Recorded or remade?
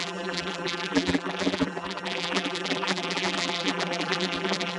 remade